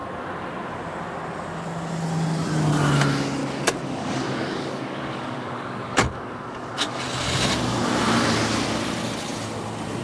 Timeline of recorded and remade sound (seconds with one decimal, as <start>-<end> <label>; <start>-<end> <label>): 0.0-3.4 recorded; 3.4-7.0 remade; 7.0-10.0 recorded